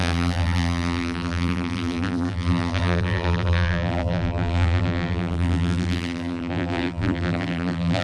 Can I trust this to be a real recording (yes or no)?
no